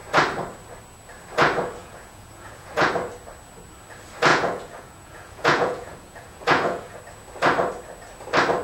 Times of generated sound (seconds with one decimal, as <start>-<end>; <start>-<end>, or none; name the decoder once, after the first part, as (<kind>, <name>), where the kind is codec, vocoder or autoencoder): 1.8-2.9 (vocoder, Vocos); 4.3-7.0